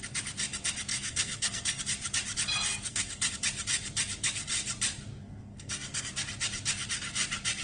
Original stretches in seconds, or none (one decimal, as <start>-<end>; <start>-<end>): 0.0-0.9; 1.8-2.7; 3.3-5.2; 6.1-7.6